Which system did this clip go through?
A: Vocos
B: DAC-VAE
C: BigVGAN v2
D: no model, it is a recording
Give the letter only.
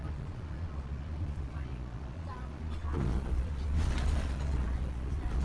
A